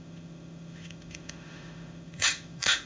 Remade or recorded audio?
remade